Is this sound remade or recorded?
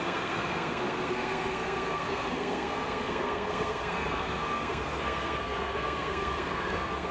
remade